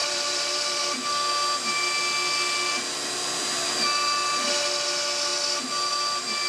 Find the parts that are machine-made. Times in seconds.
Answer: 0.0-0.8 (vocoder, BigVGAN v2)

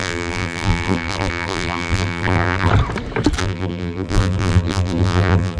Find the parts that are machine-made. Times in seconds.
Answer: 0.0-2.7 (vocoder, BigVGAN v2); 3.4-5.6

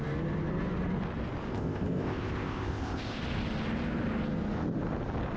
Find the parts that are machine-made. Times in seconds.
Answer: 1.5-3.2 (codec, ZipCodec)